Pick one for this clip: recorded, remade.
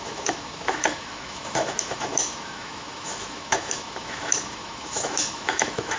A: remade